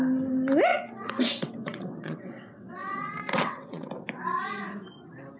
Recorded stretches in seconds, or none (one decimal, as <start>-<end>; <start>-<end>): 0.0-0.7; 3.9-5.4